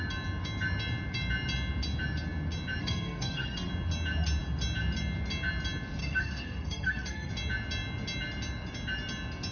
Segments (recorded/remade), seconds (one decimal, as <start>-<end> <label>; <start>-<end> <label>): 0.0-2.8 recorded; 2.8-3.7 remade; 3.7-6.0 recorded; 6.0-7.3 remade; 7.3-9.5 recorded